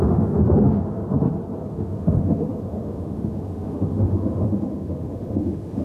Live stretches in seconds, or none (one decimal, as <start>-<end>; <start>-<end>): 1.0-1.7